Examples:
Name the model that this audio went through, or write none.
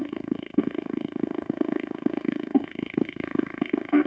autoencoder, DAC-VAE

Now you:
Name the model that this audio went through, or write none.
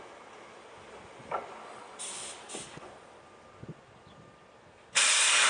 none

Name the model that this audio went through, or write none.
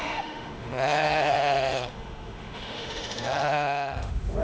autoencoder, DAC-VAE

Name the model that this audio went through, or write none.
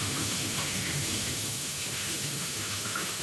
autoencoder, DAC-VAE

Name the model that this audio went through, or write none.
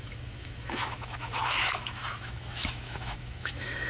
autoencoder, DAC-VAE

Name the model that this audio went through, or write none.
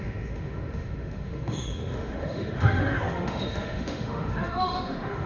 autoencoder, DAC-VAE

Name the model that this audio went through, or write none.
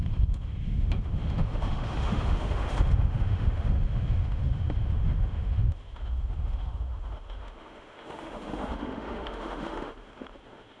autoencoder, DAC-VAE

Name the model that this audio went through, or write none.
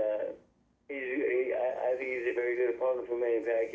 none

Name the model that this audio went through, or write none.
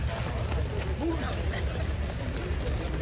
none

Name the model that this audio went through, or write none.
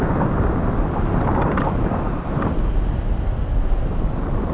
none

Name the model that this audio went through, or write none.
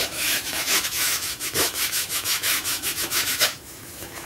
autoencoder, DAC-VAE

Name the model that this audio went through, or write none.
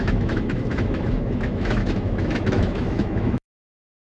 autoencoder, DAC-VAE